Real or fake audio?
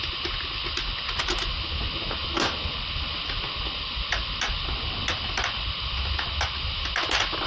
real